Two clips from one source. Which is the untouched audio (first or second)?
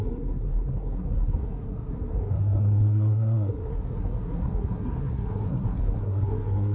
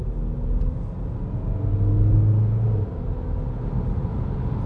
second